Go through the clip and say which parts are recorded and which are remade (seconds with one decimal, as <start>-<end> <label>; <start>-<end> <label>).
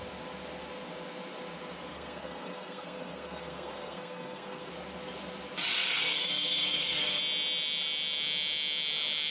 0.0-1.9 recorded; 1.9-4.7 remade; 4.7-5.8 recorded; 5.8-7.2 remade; 7.2-9.3 recorded